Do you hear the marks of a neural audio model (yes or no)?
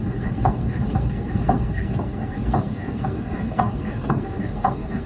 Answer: yes